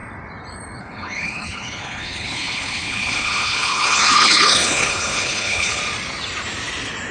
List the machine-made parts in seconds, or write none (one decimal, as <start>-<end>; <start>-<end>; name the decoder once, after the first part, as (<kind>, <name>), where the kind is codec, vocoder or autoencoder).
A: 0.8-5.8 (codec, HILCodec)